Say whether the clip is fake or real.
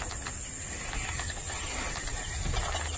real